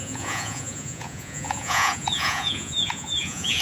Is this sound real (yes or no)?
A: no